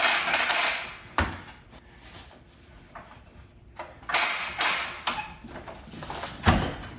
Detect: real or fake real